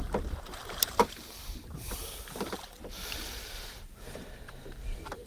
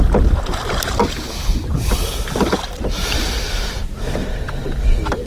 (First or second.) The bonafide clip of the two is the second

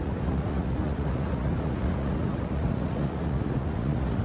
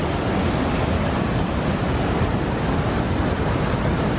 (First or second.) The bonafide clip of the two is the second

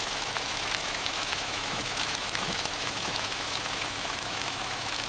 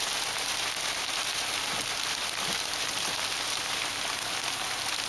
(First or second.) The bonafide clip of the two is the second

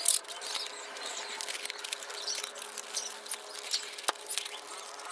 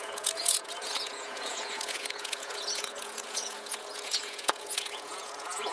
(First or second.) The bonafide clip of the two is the first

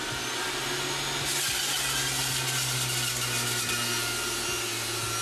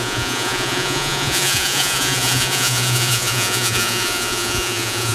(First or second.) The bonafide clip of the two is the first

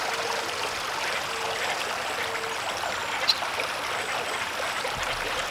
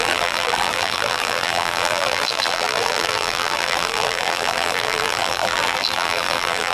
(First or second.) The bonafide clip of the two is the first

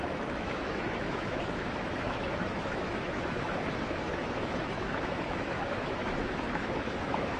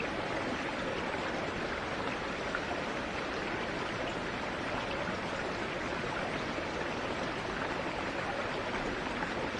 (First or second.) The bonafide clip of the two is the second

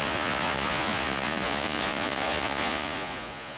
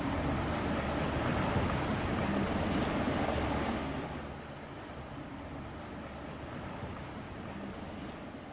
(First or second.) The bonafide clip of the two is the second